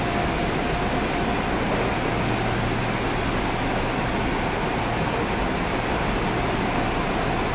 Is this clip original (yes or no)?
yes